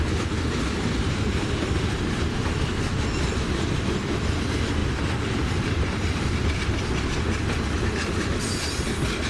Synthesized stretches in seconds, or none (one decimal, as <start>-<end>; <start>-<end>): none